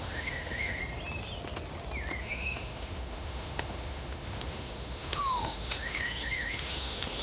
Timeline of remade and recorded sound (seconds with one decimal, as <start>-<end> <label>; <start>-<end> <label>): 0.0-0.8 remade; 0.8-2.2 recorded; 2.2-7.2 remade